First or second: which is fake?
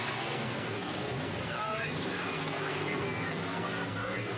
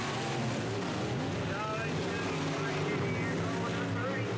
first